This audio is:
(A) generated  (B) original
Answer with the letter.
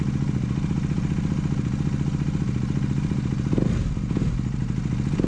B